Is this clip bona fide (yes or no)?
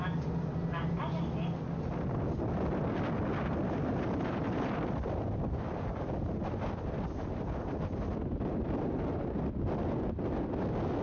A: yes